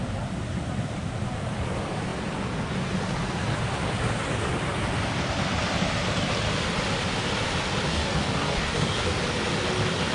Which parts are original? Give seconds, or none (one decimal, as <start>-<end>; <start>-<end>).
0.0-7.9; 9.2-10.1